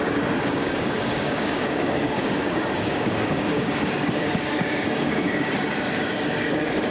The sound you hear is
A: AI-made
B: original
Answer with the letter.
A